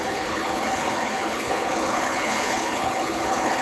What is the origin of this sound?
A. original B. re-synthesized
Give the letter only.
B